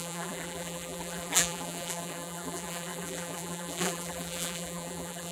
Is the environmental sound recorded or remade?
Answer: remade